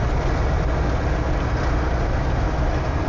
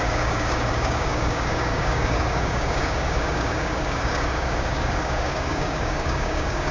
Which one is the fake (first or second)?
second